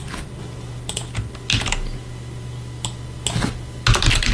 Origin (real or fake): real